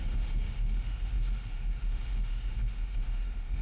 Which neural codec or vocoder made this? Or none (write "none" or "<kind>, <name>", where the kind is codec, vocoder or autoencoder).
autoencoder, DAC-VAE